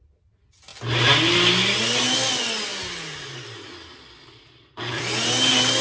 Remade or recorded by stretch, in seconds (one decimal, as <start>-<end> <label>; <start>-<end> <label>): 0.0-5.8 recorded